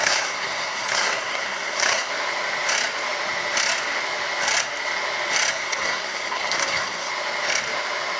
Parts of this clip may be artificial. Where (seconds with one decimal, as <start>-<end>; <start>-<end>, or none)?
0.0-2.1; 5.5-7.1